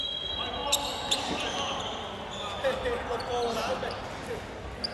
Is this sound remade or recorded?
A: recorded